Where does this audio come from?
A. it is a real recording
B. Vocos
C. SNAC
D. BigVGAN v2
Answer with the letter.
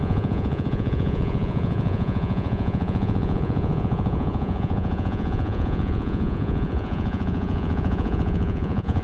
B